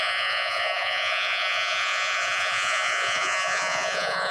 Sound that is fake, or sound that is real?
fake